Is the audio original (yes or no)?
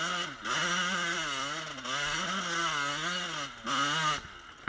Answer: yes